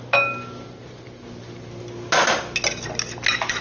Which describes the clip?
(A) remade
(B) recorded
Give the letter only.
B